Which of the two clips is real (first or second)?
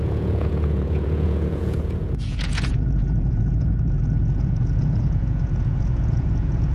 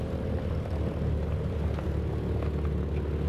second